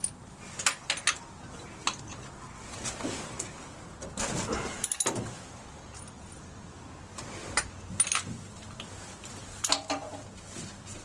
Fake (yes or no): no